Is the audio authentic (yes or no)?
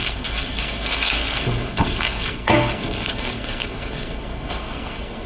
no